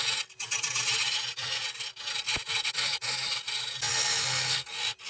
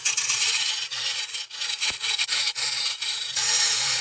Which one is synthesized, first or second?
second